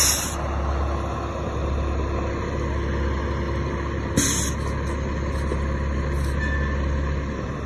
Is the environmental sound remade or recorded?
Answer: recorded